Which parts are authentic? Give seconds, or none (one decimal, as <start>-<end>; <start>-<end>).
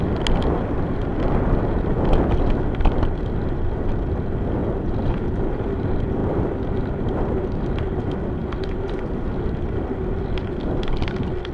0.0-4.6; 5.6-6.2; 8.0-8.4; 9.2-11.5